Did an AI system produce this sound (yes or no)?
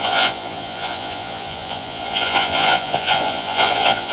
yes